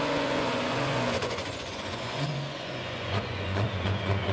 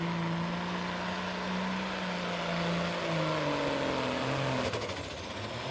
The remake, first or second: first